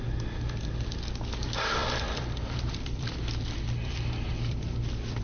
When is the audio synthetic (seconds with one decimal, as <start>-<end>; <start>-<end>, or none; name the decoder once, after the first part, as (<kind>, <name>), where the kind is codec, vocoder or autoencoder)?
1.8-5.2 (vocoder, BigVGAN v2)